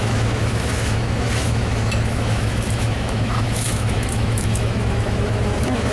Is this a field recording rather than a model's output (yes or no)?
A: no